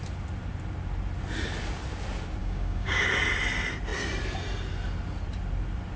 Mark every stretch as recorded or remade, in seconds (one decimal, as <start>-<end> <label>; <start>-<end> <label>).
0.0-2.4 recorded; 2.4-3.1 remade; 3.1-6.0 recorded